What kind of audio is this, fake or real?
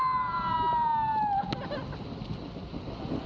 real